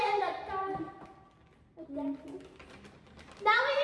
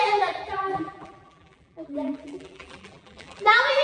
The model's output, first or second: second